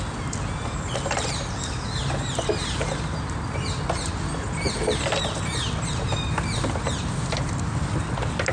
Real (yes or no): yes